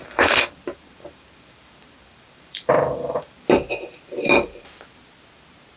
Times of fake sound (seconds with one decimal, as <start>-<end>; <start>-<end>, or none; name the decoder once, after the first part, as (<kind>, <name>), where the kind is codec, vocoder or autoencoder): 0.0-3.4 (vocoder, BigVGAN v2)